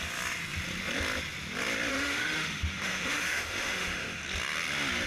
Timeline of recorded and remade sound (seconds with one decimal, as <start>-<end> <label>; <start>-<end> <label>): 0.0-1.9 recorded; 1.9-4.2 remade; 4.2-5.1 recorded